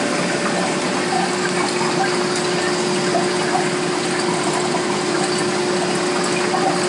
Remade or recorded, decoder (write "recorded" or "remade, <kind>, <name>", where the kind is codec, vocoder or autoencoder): recorded